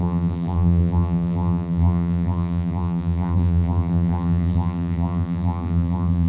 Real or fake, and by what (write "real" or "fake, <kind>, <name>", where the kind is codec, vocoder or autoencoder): fake, vocoder, BigVGAN v2